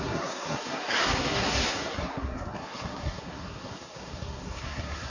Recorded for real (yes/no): no